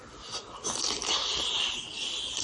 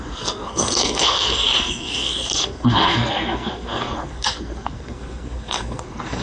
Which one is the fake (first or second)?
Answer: second